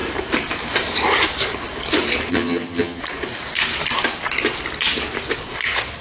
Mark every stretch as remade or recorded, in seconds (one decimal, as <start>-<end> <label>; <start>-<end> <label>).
0.0-2.3 recorded; 2.3-3.0 remade; 3.0-6.0 recorded